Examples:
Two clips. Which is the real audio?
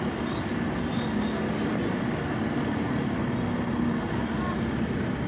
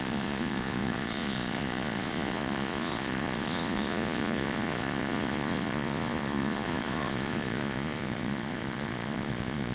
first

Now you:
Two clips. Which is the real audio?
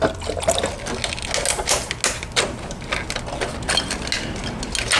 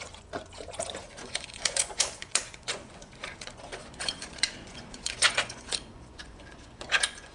first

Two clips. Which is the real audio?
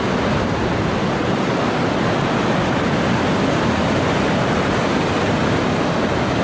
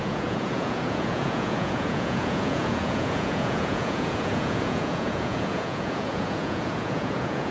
first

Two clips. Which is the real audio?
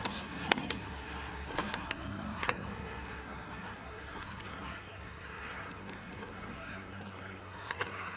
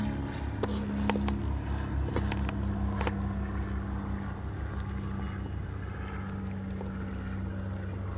second